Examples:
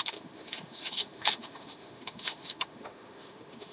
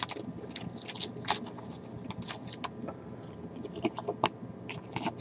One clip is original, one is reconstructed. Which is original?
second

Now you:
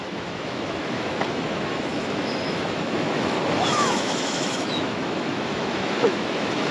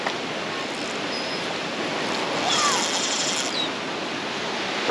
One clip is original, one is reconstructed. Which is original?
second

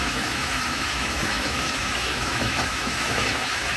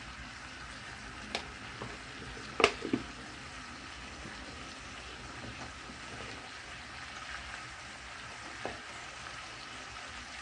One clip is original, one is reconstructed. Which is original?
second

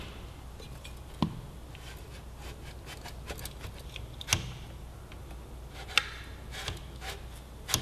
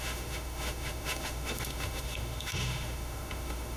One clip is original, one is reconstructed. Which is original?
first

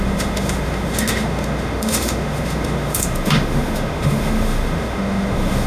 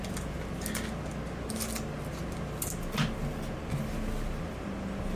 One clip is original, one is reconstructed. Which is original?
second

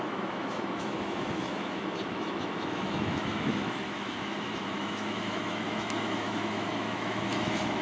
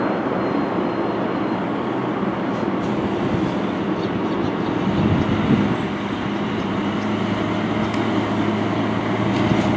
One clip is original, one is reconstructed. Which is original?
second